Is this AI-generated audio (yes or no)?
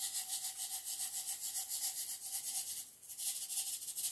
no